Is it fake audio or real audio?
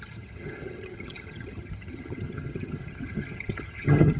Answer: fake